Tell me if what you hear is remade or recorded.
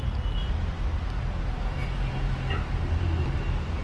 recorded